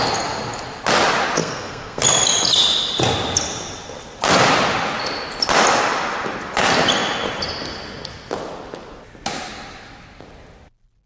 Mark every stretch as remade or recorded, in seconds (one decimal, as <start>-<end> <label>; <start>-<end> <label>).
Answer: 0.0-1.4 recorded; 1.4-2.0 remade; 2.0-11.1 recorded